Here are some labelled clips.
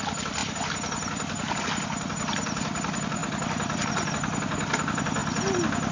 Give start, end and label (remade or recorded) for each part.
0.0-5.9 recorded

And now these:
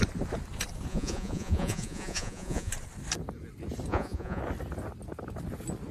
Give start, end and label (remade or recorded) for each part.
0.0-0.9 recorded; 0.9-2.7 remade; 2.7-3.9 recorded; 3.9-4.4 remade; 4.4-5.9 recorded

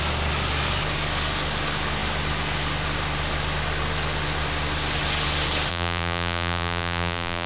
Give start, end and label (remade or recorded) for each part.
0.0-5.7 recorded; 5.7-7.5 remade